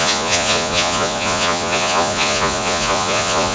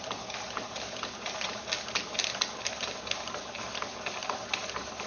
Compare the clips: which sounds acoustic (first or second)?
second